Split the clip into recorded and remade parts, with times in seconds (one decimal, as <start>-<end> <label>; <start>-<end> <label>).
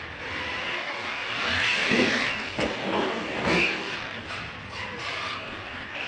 0.0-0.6 recorded; 0.6-4.3 remade; 4.3-5.3 recorded; 5.3-6.1 remade